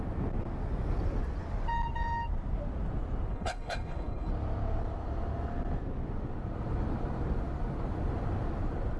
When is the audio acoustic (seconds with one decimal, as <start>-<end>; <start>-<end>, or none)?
0.0-3.3; 4.3-9.0